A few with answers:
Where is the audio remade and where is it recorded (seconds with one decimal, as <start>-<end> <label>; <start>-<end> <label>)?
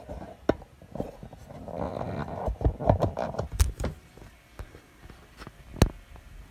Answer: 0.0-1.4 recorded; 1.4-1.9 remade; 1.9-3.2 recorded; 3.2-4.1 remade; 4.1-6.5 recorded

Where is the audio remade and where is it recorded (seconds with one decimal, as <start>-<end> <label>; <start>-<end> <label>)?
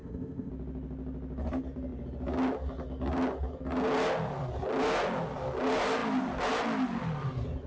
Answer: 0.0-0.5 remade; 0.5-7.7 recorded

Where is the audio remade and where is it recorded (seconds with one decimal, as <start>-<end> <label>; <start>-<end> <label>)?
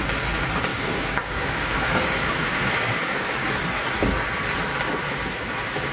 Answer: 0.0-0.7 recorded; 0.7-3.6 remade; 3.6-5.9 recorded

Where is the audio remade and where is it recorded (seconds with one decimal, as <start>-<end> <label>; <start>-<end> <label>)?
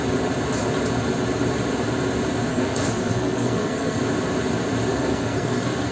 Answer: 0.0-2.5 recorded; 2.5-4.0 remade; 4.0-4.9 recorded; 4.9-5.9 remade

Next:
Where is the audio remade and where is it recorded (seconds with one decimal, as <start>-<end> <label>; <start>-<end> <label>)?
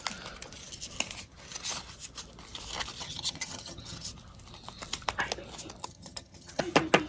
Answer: 0.0-3.0 recorded; 3.0-4.1 remade; 4.1-5.8 recorded; 5.8-6.6 remade; 6.6-7.1 recorded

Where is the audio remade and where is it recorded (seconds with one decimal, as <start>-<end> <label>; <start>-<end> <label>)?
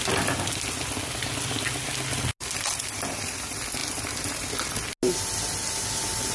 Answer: 0.0-6.3 recorded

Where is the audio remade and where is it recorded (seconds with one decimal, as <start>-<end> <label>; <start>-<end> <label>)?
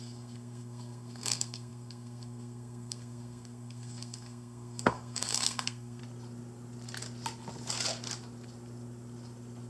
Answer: 0.0-6.0 remade; 6.0-9.7 recorded